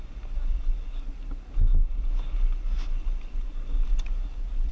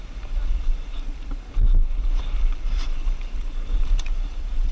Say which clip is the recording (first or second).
first